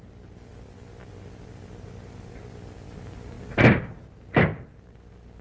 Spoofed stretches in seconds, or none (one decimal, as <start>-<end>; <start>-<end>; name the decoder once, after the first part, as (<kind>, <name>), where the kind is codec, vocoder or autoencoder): none